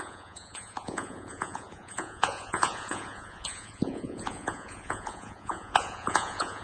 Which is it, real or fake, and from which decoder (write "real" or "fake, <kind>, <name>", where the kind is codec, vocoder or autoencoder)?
fake, vocoder, Vocos